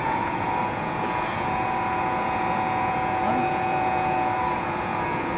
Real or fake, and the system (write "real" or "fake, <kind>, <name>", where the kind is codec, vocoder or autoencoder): fake, vocoder, Vocos